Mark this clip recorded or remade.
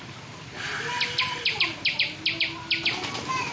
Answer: recorded